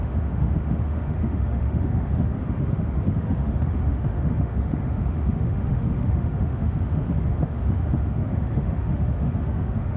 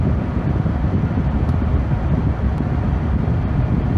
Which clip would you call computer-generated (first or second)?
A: first